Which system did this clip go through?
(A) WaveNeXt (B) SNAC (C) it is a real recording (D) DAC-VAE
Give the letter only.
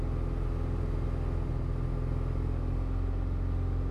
C